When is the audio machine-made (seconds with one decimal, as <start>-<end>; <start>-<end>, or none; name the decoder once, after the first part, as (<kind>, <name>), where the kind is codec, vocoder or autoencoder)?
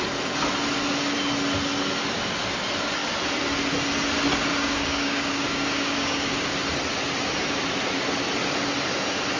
4.5-6.5 (codec, DAC)